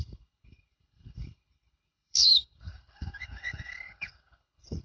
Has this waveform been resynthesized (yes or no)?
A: yes